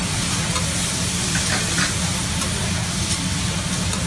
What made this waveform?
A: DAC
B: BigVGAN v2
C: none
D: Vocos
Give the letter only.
C